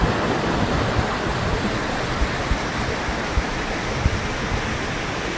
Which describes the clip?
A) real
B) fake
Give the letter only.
A